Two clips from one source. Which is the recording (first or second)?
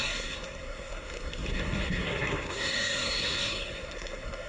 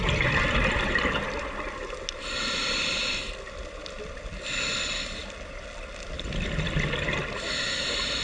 second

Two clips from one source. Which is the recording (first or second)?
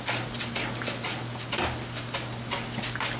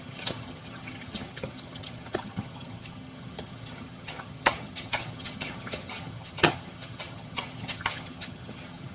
first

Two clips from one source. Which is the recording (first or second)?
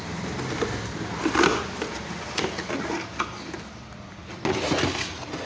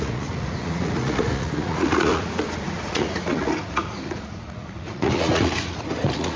first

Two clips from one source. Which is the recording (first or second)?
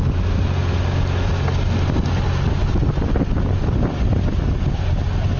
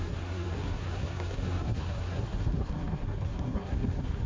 first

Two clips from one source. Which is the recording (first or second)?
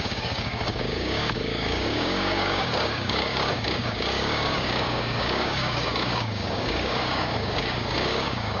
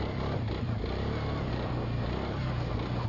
second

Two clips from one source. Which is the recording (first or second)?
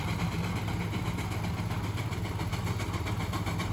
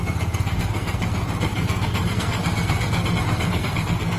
first